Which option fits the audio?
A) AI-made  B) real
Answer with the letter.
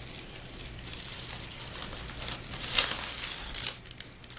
B